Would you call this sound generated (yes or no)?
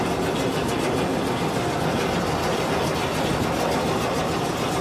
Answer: no